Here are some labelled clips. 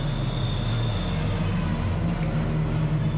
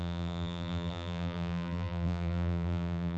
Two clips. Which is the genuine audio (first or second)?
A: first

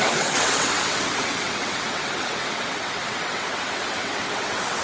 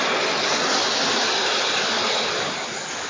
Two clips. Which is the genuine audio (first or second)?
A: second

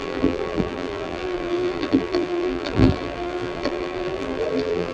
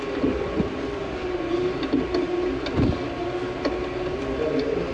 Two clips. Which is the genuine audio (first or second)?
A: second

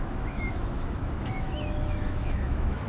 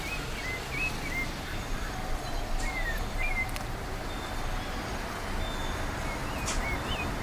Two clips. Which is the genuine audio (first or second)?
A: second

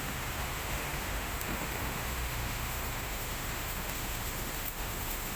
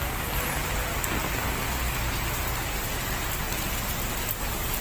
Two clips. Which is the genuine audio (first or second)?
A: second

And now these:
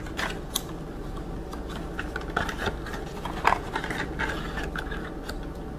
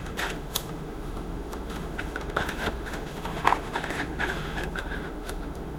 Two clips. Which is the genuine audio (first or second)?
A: first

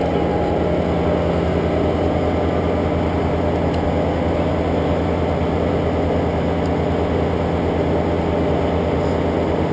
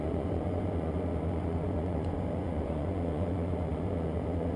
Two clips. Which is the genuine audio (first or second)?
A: first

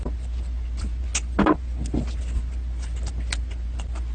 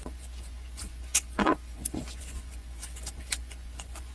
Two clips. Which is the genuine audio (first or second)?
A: first